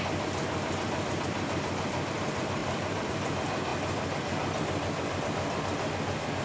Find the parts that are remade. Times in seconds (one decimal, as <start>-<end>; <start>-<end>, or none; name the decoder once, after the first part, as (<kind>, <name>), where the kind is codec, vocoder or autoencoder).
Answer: 2.6-3.1 (vocoder, BigVGAN v2)